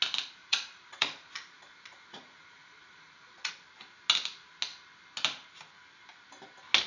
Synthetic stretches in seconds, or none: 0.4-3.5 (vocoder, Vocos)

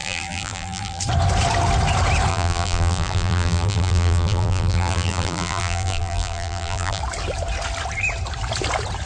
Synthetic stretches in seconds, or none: 0.0-1.0 (vocoder, BigVGAN v2); 2.3-7.0

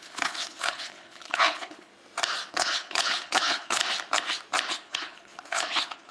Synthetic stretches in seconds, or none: 0.0-1.9 (codec, HILCodec); 2.5-3.8; 4.7-6.1

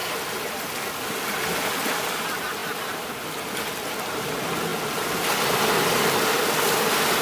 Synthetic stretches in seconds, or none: 2.6-3.4 (vocoder, BigVGAN v2)

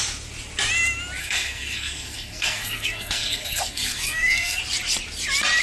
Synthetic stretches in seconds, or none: 1.2-4.6 (codec, SNAC)

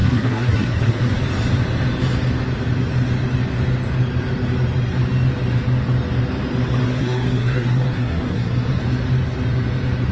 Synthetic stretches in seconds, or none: 0.0-1.2 (codec, SNAC); 6.8-8.8

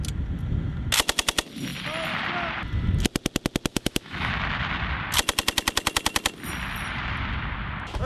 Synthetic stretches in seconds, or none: 3.7-4.3 (autoencoder, DAC-VAE)

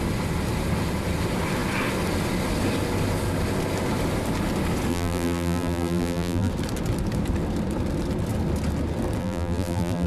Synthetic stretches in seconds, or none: 4.9-6.5 (vocoder, BigVGAN v2); 9.2-10.1